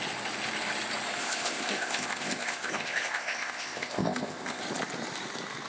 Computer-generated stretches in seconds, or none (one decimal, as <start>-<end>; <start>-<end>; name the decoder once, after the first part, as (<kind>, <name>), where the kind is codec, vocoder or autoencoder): 1.2-4.6 (codec, ZipCodec)